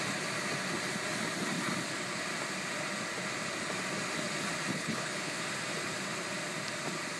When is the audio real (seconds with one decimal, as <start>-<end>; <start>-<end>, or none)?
0.0-4.7; 5.4-7.2